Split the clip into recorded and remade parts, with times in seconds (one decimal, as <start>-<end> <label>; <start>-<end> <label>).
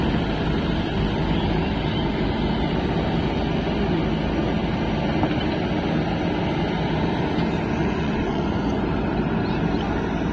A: 0.0-7.8 recorded; 7.8-8.8 remade; 8.8-10.3 recorded